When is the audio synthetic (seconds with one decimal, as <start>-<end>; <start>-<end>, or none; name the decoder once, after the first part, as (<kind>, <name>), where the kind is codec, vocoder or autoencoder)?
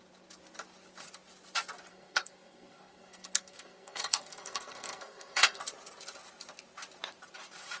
1.9-5.6 (codec, SNAC)